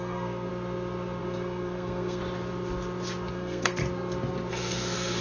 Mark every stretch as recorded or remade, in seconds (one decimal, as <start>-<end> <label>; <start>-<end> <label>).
0.0-0.5 remade; 0.5-1.2 recorded; 1.2-2.2 remade; 2.2-3.3 recorded; 3.3-3.8 remade; 3.8-4.5 recorded; 4.5-5.2 remade